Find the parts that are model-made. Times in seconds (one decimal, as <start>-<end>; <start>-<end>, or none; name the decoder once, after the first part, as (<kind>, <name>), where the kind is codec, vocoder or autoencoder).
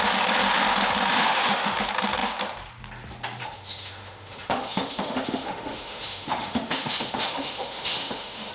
1.1-1.8 (autoencoder, DAC-VAE); 3.4-8.5